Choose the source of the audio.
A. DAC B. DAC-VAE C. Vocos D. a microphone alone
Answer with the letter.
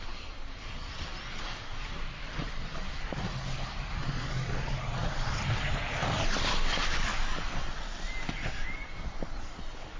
D